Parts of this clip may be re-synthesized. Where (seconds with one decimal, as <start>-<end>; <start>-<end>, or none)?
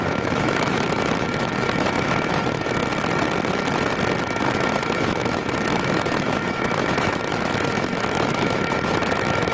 0.0-2.8; 4.2-9.5